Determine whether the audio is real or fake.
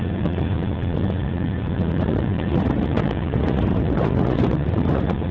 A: fake